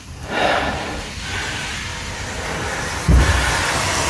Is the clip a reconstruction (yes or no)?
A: no